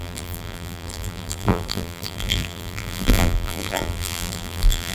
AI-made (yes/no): yes